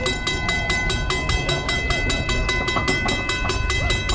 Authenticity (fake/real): real